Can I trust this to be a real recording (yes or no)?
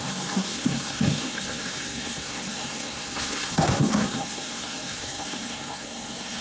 no